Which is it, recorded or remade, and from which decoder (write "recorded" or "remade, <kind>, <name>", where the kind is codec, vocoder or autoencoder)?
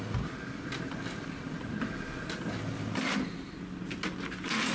recorded